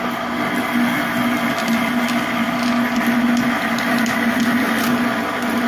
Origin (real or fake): real